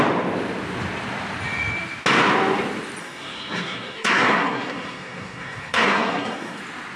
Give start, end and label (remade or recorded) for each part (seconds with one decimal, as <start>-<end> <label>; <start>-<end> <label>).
0.0-3.0 recorded; 3.0-6.6 remade; 6.6-7.0 recorded